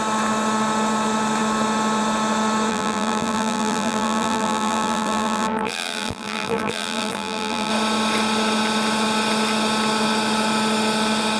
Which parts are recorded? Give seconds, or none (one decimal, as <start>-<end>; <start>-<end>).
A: 0.0-2.7; 7.7-11.4

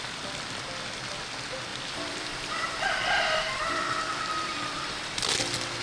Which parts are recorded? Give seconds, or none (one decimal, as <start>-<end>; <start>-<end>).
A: 0.0-1.7; 5.2-5.8

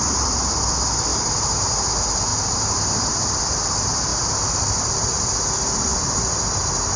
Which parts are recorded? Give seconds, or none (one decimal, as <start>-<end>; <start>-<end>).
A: 0.0-1.1; 1.7-2.3; 3.1-4.1; 4.8-7.0

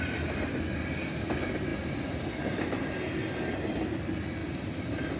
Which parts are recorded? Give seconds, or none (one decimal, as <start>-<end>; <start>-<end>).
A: 0.0-4.4

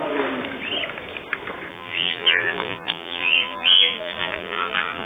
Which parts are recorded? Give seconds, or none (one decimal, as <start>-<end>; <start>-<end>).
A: 0.0-1.7

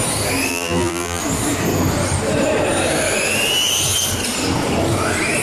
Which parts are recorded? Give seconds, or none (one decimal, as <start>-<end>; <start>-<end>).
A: 0.0-0.5; 1.2-5.4

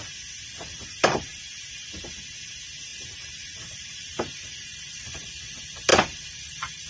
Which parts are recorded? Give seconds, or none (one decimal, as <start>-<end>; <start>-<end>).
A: 0.0-2.9; 5.4-5.9